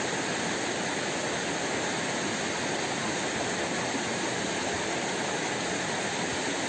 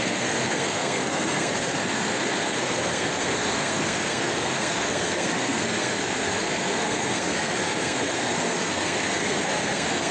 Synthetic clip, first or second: second